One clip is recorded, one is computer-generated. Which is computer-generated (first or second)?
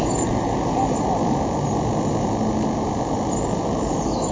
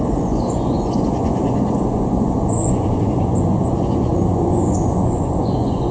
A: second